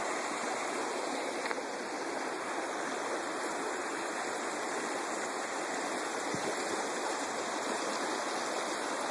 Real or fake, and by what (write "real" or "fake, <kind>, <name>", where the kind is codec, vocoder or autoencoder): real